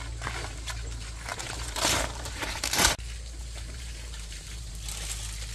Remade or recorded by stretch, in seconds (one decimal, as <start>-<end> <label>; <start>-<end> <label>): 0.0-1.3 recorded; 1.3-2.9 remade; 2.9-3.4 recorded; 3.4-4.7 remade; 4.7-5.5 recorded